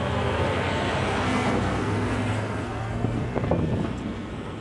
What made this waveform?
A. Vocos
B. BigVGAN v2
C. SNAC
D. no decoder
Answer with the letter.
C